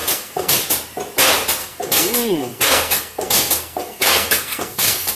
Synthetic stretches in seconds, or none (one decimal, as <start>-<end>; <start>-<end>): 0.0-0.5; 1.6-5.1